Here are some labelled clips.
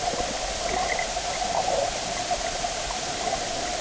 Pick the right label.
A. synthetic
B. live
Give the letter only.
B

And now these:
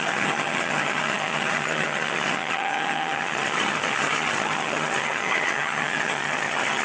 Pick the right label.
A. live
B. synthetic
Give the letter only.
B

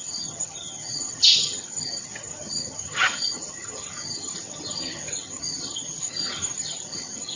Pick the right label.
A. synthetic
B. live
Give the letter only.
A